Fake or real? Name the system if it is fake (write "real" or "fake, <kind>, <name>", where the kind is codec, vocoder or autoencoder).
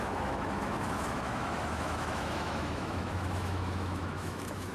fake, autoencoder, DAC-VAE